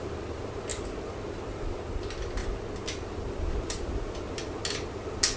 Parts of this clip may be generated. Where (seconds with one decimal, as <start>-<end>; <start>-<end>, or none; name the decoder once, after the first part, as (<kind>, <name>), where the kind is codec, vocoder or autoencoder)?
none